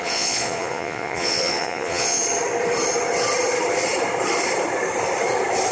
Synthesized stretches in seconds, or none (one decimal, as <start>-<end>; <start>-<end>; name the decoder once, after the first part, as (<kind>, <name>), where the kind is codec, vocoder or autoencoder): 0.0-2.2 (vocoder, Vocos)